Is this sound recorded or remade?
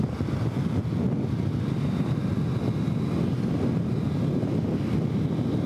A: recorded